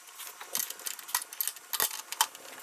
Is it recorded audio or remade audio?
recorded